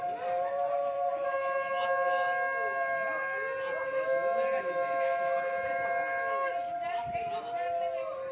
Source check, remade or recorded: recorded